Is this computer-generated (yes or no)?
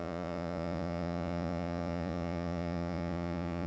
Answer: yes